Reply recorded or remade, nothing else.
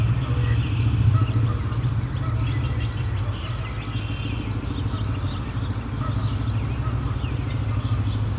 recorded